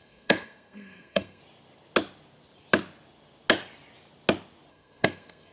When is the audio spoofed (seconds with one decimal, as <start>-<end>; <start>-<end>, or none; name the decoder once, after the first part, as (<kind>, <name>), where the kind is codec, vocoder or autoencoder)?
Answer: 0.0-1.4 (codec, SNAC); 4.7-5.5

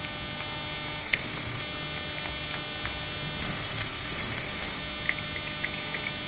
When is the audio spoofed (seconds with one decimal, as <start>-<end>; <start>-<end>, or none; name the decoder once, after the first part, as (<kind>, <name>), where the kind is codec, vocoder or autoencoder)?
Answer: 1.0-1.6 (codec, SNAC); 3.4-4.8

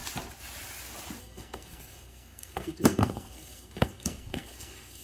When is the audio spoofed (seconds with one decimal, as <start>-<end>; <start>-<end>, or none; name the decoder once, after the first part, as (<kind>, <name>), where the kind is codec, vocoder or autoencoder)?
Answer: 1.2-5.0 (codec, SNAC)

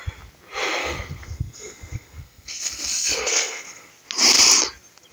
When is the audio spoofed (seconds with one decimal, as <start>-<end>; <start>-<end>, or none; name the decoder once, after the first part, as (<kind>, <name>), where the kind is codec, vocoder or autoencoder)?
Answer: 0.8-3.9 (codec, SNAC)

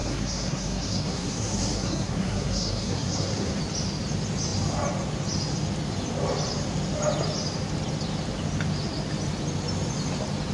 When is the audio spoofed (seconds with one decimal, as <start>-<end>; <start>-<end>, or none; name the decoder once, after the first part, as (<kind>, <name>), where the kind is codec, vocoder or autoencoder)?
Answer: 0.0-3.6 (codec, SNAC)

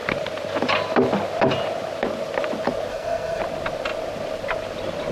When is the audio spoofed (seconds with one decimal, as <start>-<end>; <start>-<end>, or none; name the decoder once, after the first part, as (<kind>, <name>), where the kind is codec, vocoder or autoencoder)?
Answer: 2.9-3.4 (codec, SNAC)